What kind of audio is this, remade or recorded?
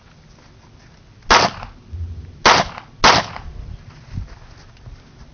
recorded